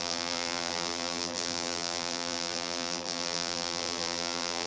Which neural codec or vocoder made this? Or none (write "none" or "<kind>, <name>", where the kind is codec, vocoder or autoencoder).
vocoder, BigVGAN v2